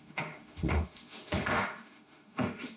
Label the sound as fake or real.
fake